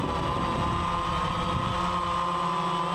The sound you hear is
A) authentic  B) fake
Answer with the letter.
A